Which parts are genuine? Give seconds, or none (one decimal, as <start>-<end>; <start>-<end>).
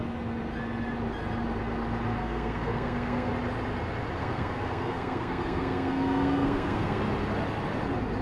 0.0-2.2; 3.3-4.2; 7.0-8.2